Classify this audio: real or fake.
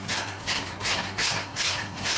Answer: fake